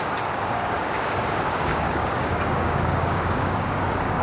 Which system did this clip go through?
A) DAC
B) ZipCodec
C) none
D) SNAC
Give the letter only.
A